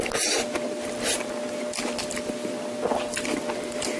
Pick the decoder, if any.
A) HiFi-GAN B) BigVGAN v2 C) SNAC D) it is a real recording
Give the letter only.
D